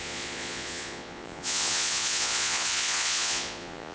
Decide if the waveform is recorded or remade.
remade